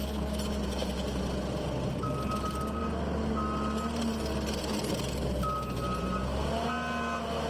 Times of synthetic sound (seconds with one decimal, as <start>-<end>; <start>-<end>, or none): none